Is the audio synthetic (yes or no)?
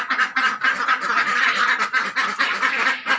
no